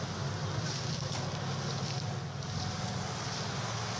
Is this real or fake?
real